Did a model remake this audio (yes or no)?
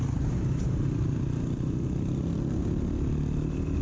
no